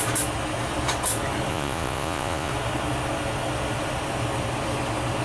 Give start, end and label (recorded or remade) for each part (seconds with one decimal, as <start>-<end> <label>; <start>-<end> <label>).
0.0-1.5 recorded; 1.5-2.5 remade; 2.5-5.2 recorded